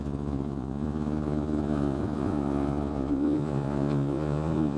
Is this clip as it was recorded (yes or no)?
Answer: no